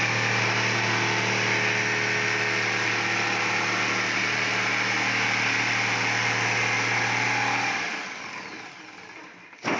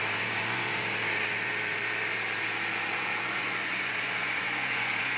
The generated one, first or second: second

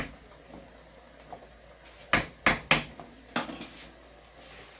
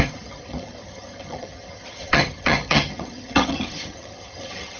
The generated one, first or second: second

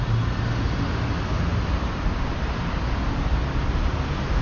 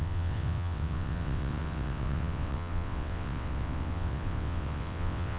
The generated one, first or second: second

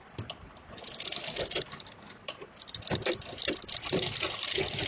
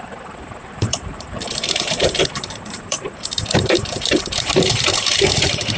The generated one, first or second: second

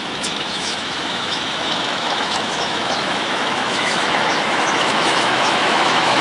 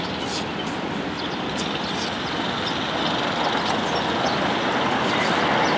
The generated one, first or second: first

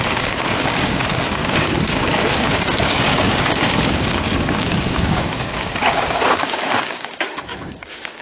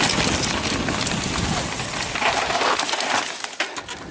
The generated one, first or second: first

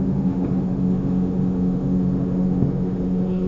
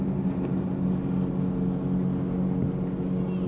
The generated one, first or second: first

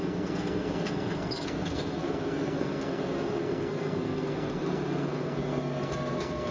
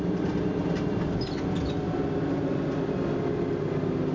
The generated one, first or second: first